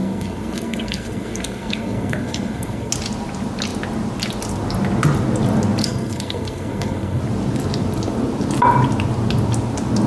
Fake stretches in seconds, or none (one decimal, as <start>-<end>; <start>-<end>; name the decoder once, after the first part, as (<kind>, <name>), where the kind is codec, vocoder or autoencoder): 0.0-2.9 (codec, SNAC); 5.8-7.2